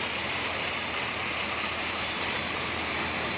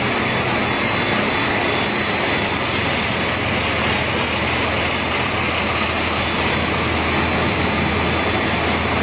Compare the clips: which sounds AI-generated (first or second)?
first